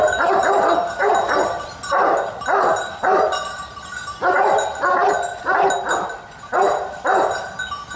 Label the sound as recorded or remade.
recorded